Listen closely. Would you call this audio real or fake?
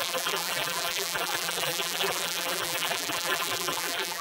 fake